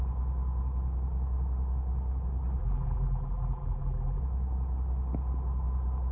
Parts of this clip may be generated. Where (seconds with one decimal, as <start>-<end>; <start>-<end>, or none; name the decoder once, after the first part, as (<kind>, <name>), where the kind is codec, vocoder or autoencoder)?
2.6-4.2 (vocoder, BigVGAN v2)